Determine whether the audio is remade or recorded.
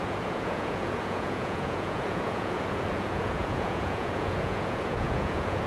remade